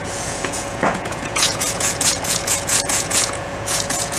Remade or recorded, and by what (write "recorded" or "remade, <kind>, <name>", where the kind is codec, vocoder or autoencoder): remade, vocoder, Vocos